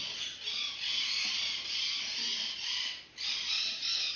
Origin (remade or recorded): recorded